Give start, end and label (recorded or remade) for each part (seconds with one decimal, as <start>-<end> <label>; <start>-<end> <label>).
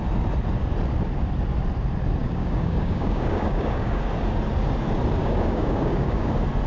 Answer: 0.0-2.2 recorded; 2.2-4.0 remade; 4.0-5.2 recorded; 5.2-6.3 remade; 6.3-6.7 recorded